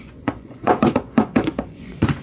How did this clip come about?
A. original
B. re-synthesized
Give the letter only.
B